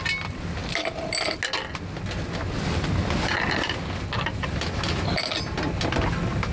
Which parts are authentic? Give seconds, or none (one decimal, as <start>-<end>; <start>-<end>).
0.0-6.5